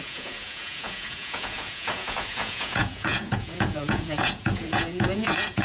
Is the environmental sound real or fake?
fake